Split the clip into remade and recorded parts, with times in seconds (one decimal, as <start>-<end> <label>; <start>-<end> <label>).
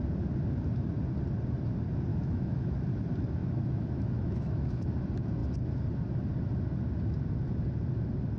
0.0-2.1 recorded; 2.1-2.8 remade; 2.8-3.4 recorded; 3.4-4.9 remade; 4.9-8.4 recorded